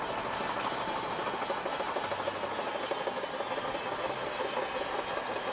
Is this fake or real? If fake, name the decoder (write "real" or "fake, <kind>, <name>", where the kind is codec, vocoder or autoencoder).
real